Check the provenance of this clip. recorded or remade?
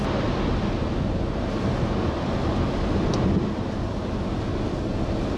recorded